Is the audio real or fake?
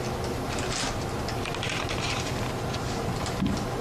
real